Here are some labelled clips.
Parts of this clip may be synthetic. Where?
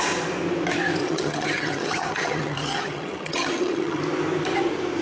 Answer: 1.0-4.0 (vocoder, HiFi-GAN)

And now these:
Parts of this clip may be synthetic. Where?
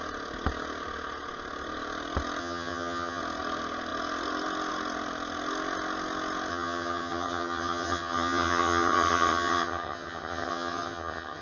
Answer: 2.4-3.2 (vocoder, HiFi-GAN); 6.5-11.4